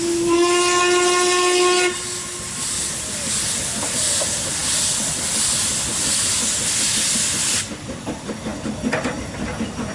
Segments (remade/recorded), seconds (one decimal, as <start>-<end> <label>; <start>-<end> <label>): 0.0-9.9 recorded